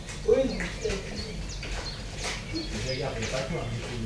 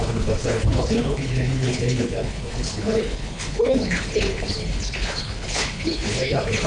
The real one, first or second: first